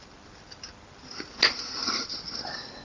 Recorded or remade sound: recorded